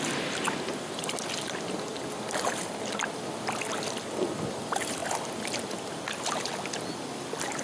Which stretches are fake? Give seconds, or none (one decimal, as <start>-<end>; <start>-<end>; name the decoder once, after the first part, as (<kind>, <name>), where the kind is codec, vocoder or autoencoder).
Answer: none